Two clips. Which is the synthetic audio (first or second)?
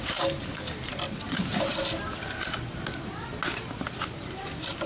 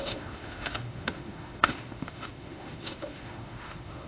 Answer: second